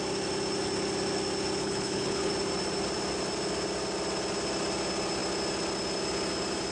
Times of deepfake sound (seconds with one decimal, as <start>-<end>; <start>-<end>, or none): 1.6-2.3